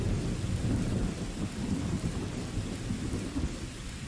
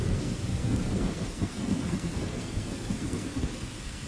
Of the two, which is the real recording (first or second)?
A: first